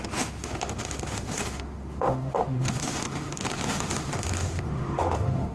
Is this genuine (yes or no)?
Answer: no